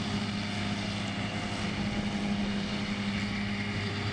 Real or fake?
real